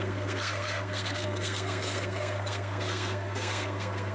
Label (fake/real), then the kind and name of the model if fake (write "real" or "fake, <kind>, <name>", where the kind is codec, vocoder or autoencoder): fake, codec, SNAC